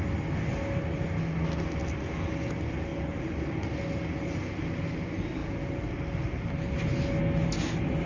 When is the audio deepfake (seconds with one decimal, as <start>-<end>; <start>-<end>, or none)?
none